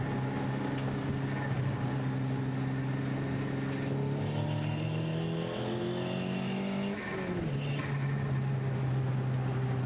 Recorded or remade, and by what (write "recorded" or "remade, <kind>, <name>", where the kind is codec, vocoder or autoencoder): recorded